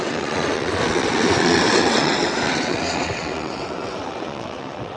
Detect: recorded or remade remade